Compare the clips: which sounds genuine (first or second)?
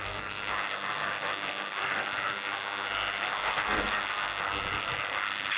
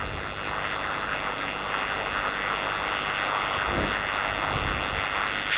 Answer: second